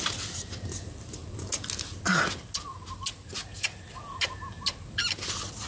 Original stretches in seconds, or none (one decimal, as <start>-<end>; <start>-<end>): 0.0-5.7